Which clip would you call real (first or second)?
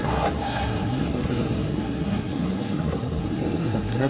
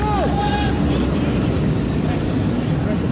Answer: second